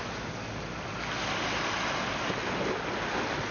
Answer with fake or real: real